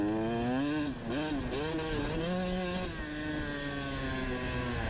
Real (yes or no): yes